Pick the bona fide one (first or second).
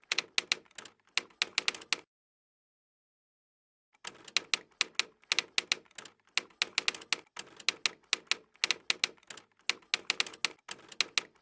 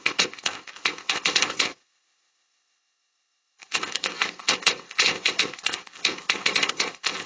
first